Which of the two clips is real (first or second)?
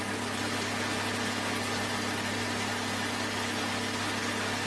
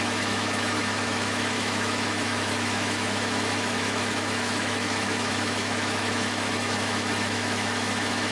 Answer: first